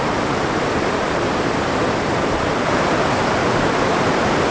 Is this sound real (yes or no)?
no